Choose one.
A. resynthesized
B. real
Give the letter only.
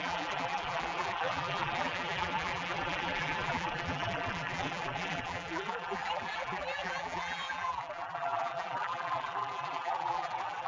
A